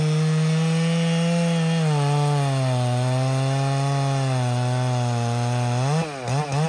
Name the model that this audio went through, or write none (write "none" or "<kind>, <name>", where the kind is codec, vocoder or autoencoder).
none